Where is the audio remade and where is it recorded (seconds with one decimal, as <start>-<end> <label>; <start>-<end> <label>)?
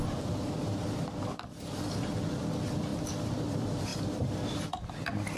0.0-5.4 recorded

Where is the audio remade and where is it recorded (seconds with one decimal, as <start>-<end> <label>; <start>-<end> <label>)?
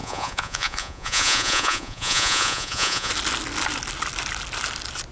0.0-3.1 remade; 3.1-5.1 recorded